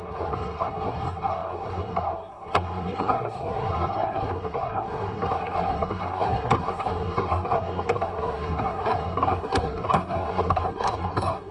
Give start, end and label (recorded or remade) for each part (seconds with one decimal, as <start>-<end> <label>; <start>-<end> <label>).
0.0-11.5 remade